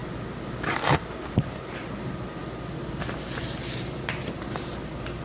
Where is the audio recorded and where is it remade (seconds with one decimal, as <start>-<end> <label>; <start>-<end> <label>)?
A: 0.0-5.2 recorded